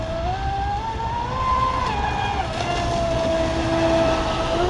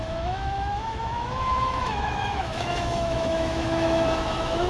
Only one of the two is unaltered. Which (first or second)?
first